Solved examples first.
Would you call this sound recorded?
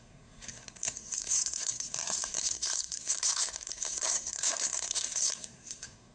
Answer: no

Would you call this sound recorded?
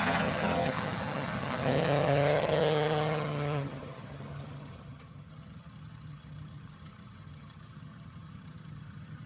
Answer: no